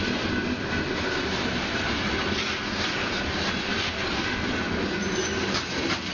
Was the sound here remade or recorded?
recorded